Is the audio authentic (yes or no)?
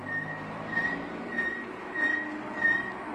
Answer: yes